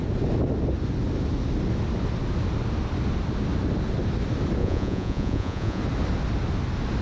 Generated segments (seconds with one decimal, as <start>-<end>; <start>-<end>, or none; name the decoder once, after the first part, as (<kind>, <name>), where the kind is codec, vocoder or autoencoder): 4.6-5.8 (vocoder, Vocos)